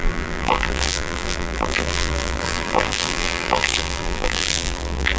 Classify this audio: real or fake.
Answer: fake